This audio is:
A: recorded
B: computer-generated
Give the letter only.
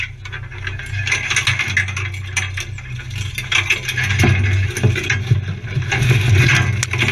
A